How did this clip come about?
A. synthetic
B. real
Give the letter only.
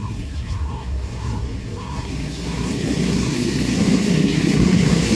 A